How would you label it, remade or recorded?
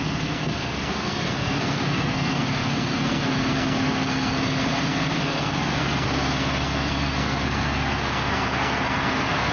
remade